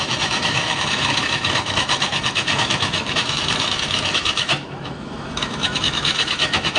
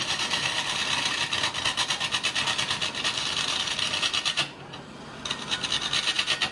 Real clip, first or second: second